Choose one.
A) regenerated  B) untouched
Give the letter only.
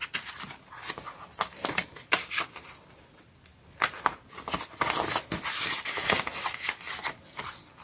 B